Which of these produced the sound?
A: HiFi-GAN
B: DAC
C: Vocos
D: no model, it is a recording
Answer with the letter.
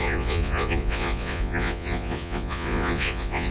C